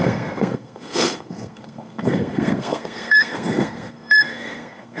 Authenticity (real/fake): fake